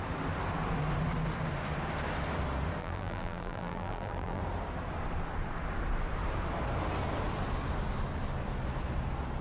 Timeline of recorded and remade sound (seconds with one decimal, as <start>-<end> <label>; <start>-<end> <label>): 0.0-2.8 recorded; 2.8-4.4 remade; 4.4-9.4 recorded

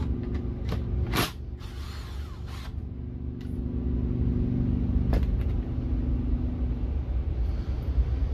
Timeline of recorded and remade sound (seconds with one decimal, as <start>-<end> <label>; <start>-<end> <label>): 0.0-8.3 recorded